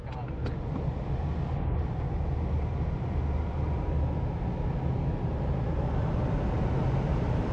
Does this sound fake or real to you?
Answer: real